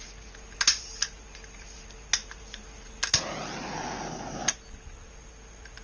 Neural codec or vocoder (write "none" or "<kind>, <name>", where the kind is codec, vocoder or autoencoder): none